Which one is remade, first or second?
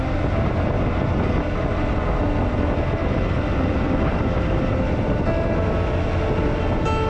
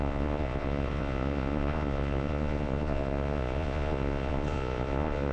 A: second